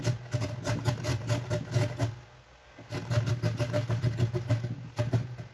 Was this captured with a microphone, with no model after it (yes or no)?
yes